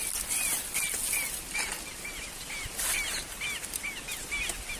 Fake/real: real